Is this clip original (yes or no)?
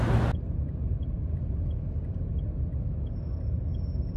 yes